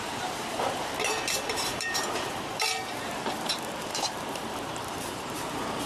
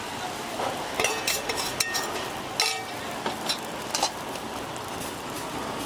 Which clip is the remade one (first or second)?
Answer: first